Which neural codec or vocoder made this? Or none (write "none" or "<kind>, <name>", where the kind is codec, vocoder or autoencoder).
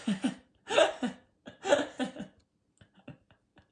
none